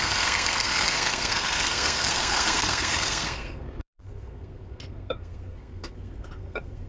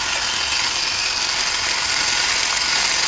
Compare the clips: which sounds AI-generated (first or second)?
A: first